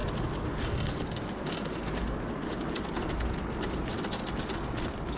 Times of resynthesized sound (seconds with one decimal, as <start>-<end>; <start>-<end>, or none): none